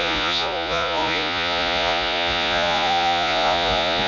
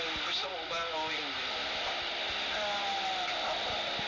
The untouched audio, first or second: second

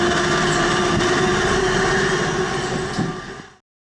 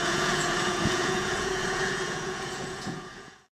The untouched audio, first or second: first